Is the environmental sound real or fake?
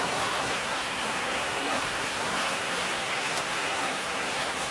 fake